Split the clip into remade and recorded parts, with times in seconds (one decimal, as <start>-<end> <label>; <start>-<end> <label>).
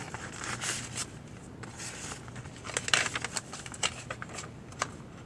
0.0-5.3 recorded